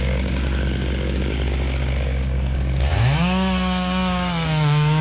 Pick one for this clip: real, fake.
fake